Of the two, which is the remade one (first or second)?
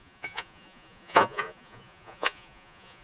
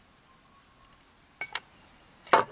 first